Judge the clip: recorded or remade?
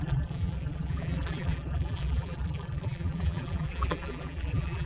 remade